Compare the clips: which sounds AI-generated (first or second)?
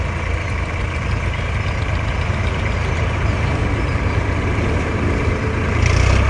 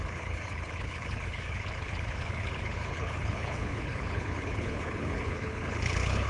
second